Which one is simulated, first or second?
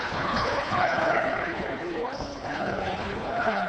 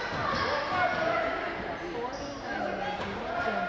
first